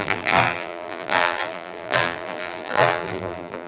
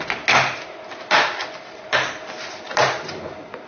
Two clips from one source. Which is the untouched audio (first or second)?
second